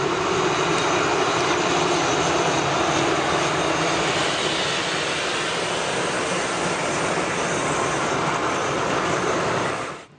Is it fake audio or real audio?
real